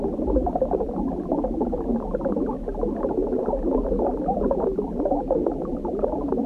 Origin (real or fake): real